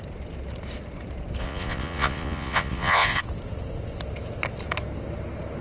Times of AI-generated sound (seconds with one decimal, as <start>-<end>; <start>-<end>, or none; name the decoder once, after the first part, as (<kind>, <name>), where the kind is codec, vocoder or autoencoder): 1.4-3.2 (vocoder, Vocos)